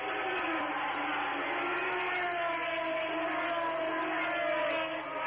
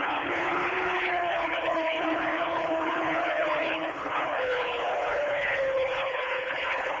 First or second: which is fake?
second